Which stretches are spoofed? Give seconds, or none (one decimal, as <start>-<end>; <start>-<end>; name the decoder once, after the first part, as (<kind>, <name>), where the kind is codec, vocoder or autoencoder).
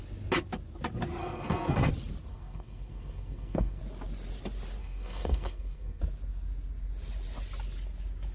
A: 1.2-1.9 (codec, SNAC); 2.3-3.8; 4.8-6.0